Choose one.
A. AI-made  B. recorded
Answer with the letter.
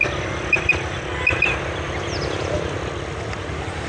B